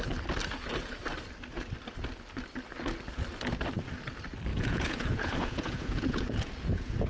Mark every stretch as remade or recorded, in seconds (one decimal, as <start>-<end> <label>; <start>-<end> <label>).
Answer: 0.0-4.5 recorded; 4.5-7.1 remade